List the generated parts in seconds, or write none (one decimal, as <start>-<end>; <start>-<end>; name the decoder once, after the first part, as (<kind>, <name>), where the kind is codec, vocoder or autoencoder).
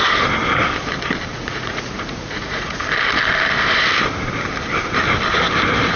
1.3-2.8 (vocoder, Vocos)